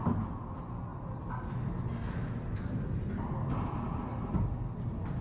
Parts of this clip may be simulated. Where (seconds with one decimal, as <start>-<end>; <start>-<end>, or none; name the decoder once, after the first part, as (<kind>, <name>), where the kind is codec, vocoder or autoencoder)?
none